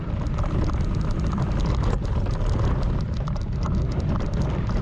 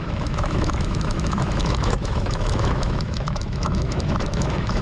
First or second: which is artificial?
second